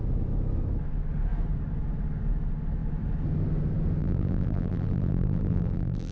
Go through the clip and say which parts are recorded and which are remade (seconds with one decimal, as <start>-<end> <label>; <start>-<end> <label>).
0.0-4.0 recorded; 4.0-6.1 remade